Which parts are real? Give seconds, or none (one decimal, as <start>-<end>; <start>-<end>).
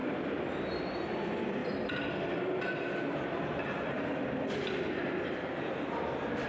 0.0-6.5